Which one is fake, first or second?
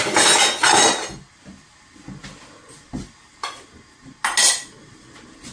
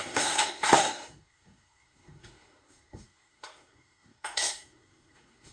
second